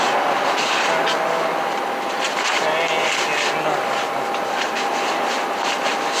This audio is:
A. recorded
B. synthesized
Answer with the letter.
A